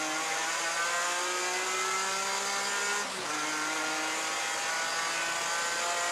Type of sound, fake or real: real